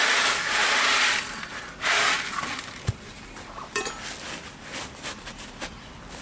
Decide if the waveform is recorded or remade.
recorded